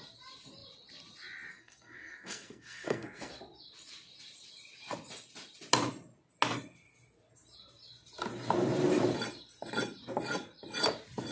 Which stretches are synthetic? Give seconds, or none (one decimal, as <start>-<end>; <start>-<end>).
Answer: 1.5-3.3